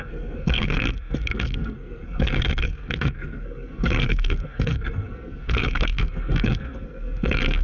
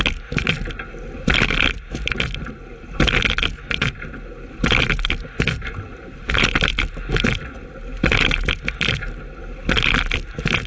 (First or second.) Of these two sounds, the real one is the second